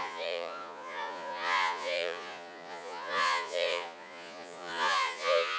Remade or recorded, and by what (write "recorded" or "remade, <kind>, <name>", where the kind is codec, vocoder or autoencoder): remade, vocoder, Vocos